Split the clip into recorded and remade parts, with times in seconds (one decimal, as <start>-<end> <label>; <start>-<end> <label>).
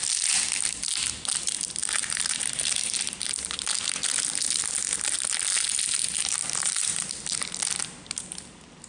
0.0-1.8 recorded; 1.8-3.3 remade; 3.3-6.4 recorded; 6.4-7.1 remade; 7.1-8.9 recorded